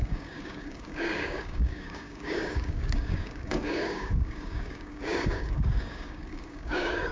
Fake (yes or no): yes